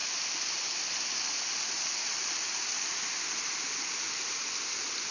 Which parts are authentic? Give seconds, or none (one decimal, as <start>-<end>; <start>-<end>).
0.0-5.1